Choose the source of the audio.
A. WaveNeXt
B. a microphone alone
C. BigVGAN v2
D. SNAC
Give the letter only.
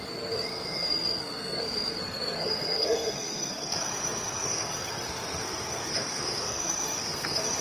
D